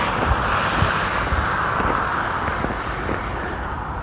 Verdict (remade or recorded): recorded